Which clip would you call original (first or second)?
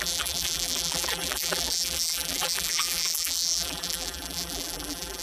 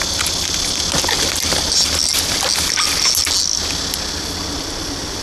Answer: second